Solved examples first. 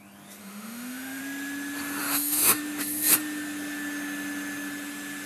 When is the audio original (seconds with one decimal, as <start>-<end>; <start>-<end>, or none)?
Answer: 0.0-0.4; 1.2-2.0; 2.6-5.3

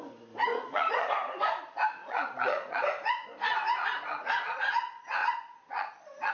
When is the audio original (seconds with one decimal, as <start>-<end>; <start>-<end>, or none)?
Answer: 0.0-0.5; 1.1-2.0; 2.8-4.1; 4.7-5.2

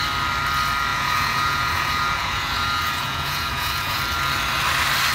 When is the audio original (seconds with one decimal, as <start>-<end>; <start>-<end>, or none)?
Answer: 0.0-0.9; 4.0-5.1

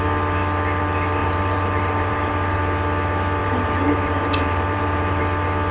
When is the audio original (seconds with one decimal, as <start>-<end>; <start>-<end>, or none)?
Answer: 0.0-1.2; 2.6-3.4; 5.2-5.7